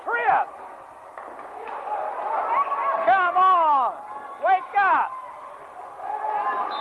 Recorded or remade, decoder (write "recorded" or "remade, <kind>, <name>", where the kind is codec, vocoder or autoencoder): recorded